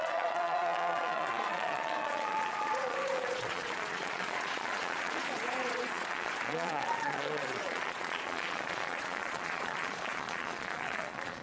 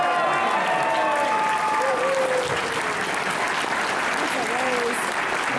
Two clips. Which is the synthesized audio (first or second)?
first